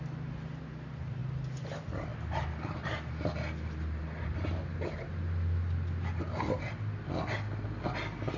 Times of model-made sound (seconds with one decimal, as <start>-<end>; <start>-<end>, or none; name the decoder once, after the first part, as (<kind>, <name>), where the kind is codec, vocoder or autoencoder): none